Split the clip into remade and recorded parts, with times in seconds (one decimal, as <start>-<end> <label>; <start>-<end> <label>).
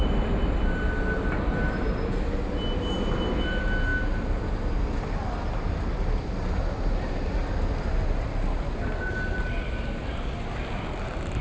0.0-11.4 recorded